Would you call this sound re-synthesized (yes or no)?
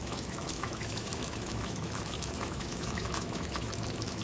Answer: yes